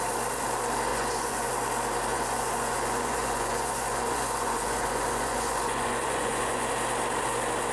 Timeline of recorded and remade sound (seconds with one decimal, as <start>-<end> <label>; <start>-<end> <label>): 0.0-0.9 recorded; 0.9-1.5 remade; 1.5-2.1 recorded; 2.1-6.7 remade; 6.7-7.7 recorded